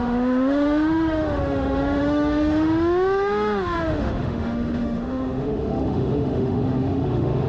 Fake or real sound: fake